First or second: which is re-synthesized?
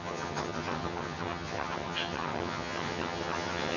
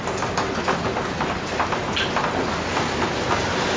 first